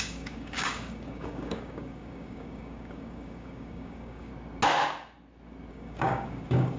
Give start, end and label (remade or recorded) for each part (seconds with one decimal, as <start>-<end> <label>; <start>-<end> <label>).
0.0-4.3 remade; 4.3-5.7 recorded; 5.7-6.8 remade